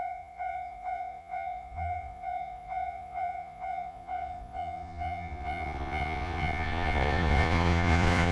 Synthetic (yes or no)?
yes